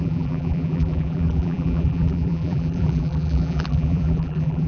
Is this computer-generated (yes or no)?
yes